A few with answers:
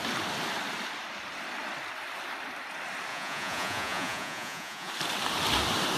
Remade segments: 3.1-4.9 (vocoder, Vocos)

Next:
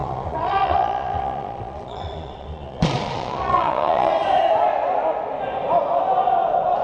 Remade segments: 0.0-4.1 (vocoder, Vocos)

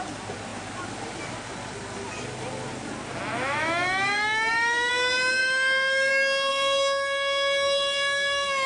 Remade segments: 3.3-4.9 (autoencoder, DAC-VAE); 5.4-6.1; 6.5-8.7

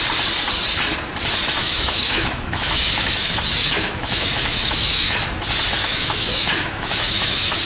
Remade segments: 1.6-5.2 (autoencoder, DAC-VAE); 5.8-7.6

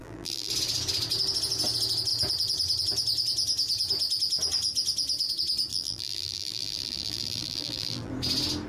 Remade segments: 0.0-0.5 (vocoder, BigVGAN v2); 5.7-8.1

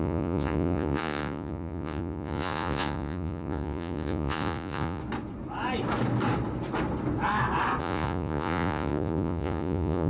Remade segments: 0.0-5.0 (vocoder, Vocos); 7.8-10.1

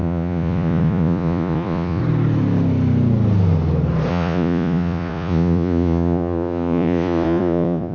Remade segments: 0.0-2.0 (vocoder, Vocos); 4.1-7.9